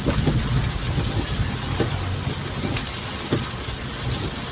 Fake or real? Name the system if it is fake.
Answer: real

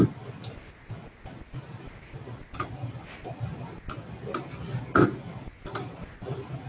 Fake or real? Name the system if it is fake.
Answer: real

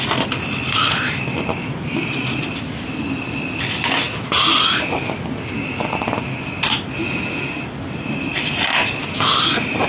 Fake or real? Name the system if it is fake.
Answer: real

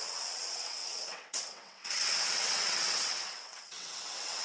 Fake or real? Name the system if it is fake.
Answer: fake, vocoder, WaveNeXt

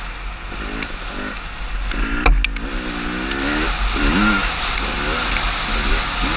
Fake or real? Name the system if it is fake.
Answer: real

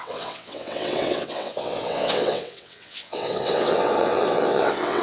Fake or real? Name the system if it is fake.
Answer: fake, vocoder, WaveNeXt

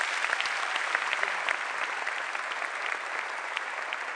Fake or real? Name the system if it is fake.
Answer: real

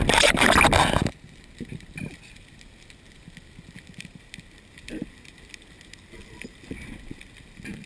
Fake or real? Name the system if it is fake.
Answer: real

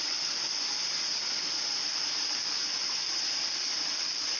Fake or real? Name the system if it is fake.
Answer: real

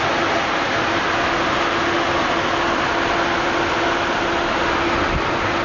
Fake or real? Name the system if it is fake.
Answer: real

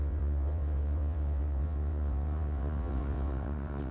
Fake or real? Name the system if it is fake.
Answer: fake, vocoder, WaveNeXt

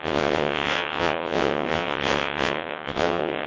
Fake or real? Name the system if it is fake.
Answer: fake, vocoder, WaveNeXt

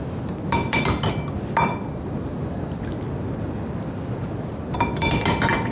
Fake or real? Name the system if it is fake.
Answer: real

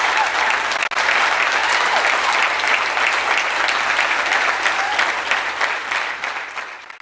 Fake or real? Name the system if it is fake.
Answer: real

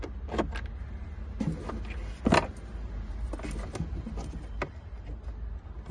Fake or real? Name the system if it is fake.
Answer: real